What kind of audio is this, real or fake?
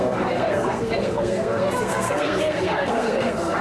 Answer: fake